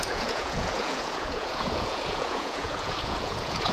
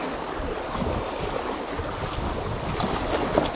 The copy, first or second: first